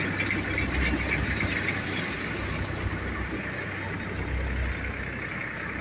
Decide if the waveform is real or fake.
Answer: real